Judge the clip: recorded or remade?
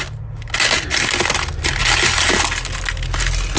recorded